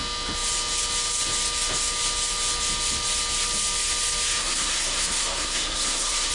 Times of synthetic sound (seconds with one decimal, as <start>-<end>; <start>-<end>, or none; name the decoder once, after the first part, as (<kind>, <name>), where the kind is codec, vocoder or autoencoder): 4.4-6.3 (codec, SNAC)